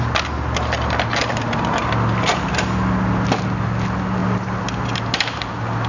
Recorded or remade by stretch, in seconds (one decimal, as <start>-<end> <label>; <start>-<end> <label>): 0.0-5.9 recorded